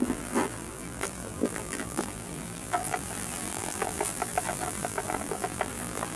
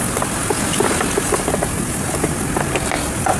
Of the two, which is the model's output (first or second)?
first